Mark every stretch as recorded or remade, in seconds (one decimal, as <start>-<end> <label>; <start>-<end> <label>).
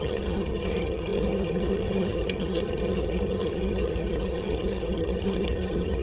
0.0-6.0 remade